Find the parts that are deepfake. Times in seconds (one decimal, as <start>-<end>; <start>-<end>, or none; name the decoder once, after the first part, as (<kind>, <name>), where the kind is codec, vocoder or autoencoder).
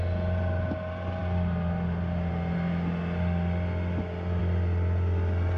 none